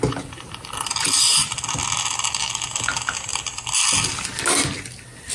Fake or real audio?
real